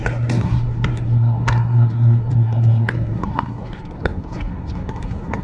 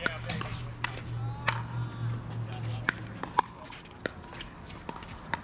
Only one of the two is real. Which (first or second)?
second